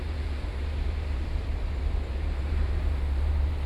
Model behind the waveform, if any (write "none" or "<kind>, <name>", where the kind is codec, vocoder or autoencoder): vocoder, BigVGAN v2